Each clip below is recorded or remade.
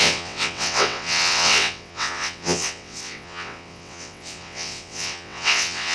remade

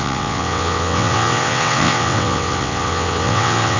remade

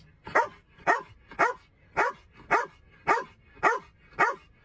recorded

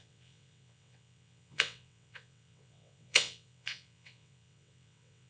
remade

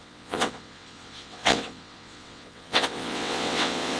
remade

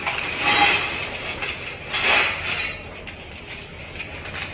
recorded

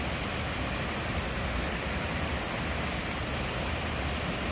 recorded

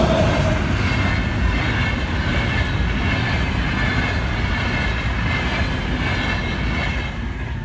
recorded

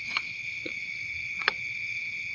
remade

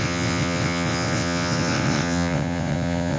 remade